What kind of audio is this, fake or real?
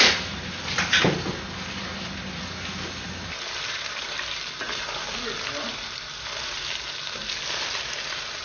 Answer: real